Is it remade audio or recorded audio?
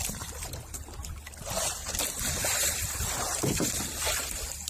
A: remade